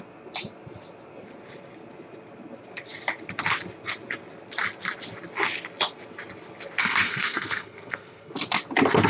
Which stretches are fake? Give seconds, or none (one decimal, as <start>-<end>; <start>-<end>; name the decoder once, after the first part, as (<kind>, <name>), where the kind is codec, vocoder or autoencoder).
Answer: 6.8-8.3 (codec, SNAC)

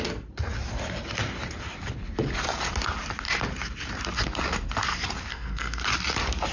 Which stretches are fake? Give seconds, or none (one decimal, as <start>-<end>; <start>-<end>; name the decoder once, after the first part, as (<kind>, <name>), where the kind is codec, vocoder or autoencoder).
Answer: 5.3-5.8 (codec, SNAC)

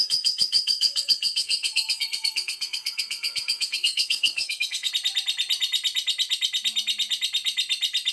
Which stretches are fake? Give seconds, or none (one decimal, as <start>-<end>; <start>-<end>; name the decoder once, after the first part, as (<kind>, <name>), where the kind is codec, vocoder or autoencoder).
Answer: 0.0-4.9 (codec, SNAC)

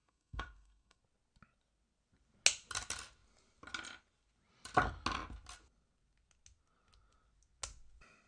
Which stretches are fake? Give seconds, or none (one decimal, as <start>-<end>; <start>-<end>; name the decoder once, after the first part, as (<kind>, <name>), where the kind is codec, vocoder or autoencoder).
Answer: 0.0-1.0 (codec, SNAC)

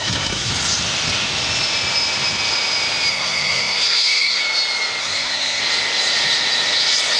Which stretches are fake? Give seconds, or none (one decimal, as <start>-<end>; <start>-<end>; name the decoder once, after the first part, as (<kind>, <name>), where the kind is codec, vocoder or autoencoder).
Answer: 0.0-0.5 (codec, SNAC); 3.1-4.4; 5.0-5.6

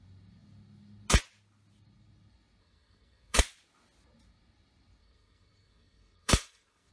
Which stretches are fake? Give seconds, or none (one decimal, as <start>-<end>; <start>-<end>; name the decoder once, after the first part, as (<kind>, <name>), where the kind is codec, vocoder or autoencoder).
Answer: 2.6-3.4 (codec, SNAC); 5.0-6.9

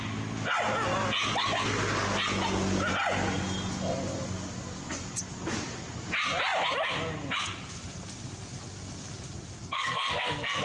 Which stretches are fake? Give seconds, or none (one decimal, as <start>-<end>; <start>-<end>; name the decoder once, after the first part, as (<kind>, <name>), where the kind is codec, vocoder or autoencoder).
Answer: 9.6-10.6 (codec, SNAC)